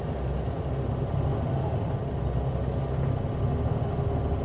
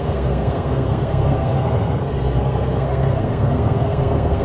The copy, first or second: second